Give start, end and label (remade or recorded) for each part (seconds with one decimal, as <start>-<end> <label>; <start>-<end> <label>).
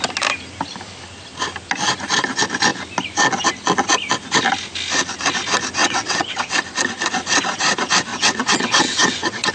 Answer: 0.0-5.8 recorded; 5.8-6.6 remade; 6.6-8.1 recorded; 8.1-9.5 remade